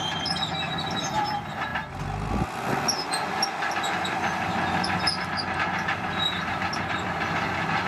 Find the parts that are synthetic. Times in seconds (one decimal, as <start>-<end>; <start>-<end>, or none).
none